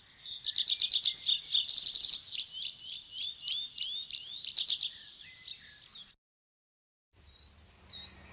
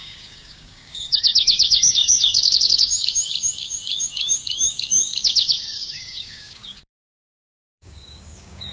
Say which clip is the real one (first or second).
first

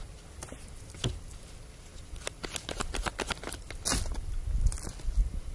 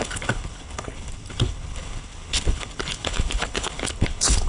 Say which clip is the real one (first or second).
first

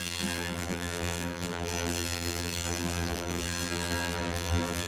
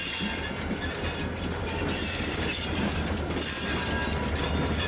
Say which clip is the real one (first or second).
second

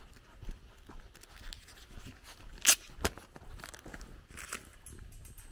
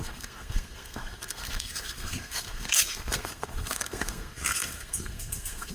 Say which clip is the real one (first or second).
first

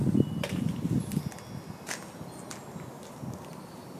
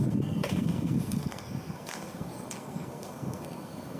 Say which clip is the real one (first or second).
first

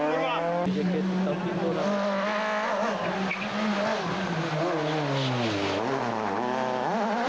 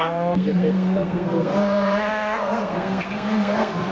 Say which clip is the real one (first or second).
first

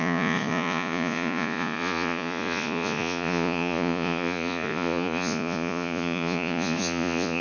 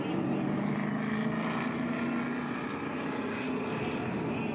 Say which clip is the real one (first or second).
second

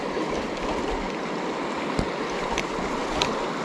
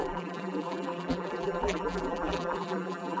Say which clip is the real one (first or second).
first